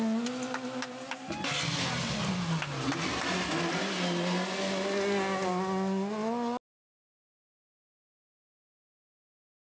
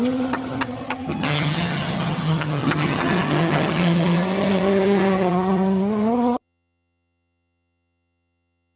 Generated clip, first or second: second